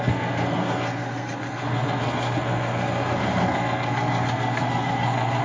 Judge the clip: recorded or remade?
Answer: remade